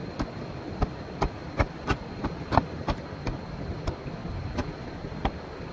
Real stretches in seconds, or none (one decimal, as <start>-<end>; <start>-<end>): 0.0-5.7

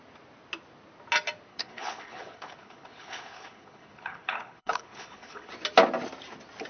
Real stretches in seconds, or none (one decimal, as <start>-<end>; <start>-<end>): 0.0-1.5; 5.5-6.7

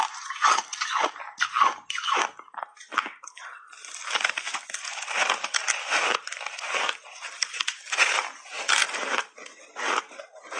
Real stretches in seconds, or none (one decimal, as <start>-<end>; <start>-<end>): 0.0-10.6

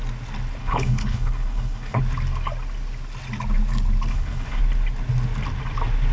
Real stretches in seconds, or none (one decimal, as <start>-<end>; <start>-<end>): 0.0-0.6; 2.0-4.1; 4.6-6.1

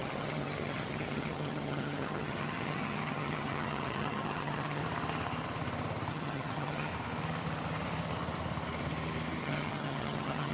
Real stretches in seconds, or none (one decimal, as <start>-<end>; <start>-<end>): 4.8-6.1; 6.9-9.4

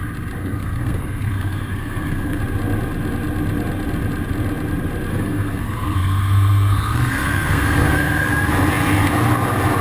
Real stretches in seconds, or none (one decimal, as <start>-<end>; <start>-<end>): 0.0-0.4; 2.4-5.1; 8.5-9.8

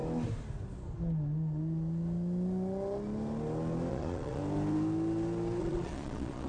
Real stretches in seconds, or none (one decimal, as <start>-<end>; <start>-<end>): 0.0-3.9; 4.4-5.6